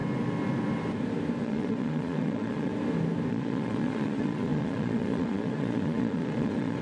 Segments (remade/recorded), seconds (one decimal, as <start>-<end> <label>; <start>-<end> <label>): 0.0-1.4 recorded; 1.4-2.7 remade; 2.7-3.3 recorded; 3.3-6.8 remade